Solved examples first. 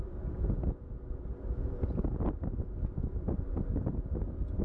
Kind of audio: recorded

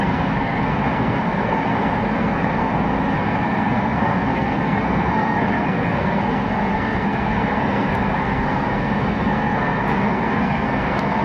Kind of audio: remade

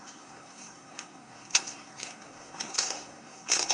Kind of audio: remade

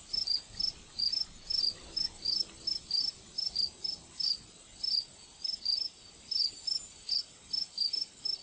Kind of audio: recorded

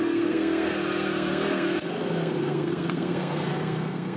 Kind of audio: remade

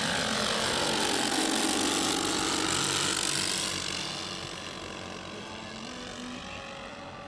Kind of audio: recorded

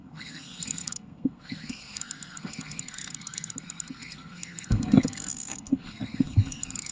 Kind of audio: remade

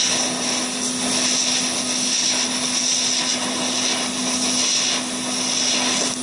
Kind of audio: recorded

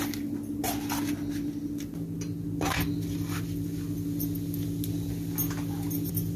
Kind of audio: recorded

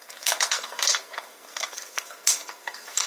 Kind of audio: remade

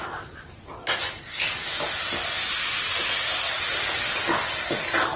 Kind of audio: recorded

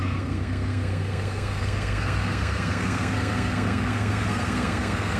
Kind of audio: remade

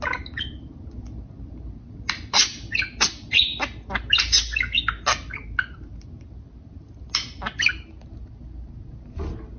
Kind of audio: recorded